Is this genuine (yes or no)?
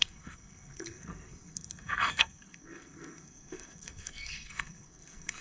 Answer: no